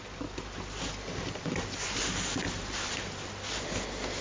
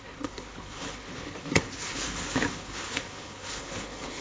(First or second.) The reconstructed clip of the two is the second